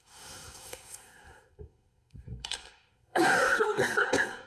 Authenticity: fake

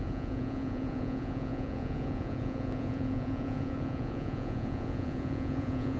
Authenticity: fake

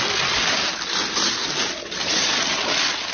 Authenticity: real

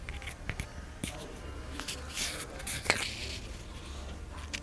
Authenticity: real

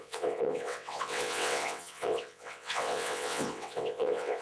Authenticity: fake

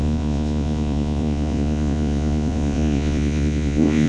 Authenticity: fake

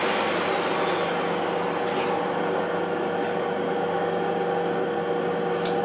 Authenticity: real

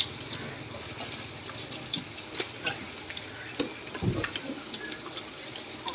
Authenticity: real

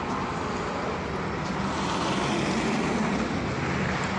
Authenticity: real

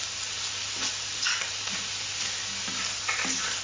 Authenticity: real